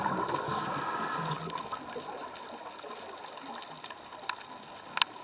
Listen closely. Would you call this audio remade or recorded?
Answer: recorded